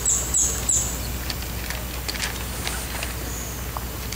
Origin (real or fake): real